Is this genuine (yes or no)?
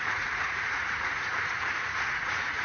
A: no